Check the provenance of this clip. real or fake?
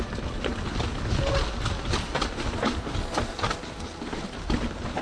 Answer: real